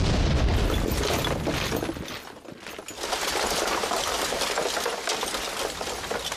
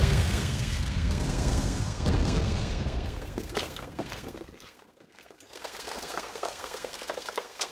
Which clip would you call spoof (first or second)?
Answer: second